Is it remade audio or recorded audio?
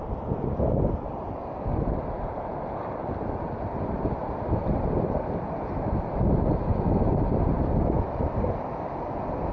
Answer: recorded